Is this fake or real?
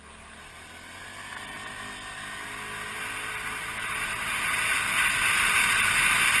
real